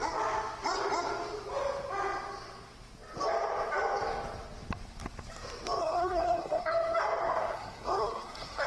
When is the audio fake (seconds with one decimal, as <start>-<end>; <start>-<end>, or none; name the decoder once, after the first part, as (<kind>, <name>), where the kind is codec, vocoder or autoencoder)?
5.8-6.7 (codec, SNAC); 7.2-8.7